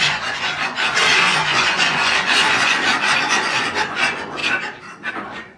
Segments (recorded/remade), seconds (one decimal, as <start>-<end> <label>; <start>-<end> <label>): 0.0-4.4 remade; 4.4-5.1 recorded; 5.1-5.6 remade